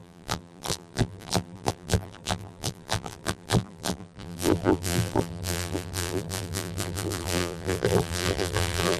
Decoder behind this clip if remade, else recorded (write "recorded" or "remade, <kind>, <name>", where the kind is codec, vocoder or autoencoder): remade, vocoder, BigVGAN v2